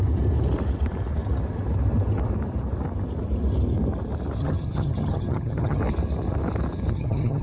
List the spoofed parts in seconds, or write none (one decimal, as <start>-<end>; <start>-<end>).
4.4-5.8; 6.9-7.4